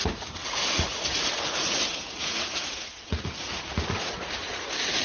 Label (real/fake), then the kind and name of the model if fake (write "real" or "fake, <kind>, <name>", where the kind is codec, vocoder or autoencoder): fake, vocoder, Vocos